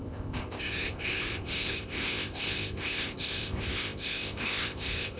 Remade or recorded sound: remade